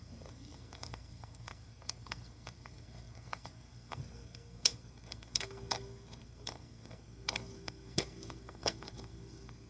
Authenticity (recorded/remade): remade